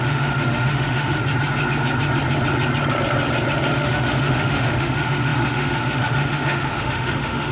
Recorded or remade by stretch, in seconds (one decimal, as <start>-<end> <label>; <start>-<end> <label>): 0.0-1.2 remade; 1.2-3.7 recorded; 3.7-7.5 remade